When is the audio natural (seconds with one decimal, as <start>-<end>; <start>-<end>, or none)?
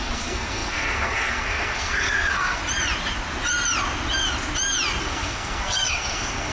2.6-5.0